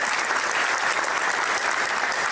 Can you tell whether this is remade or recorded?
recorded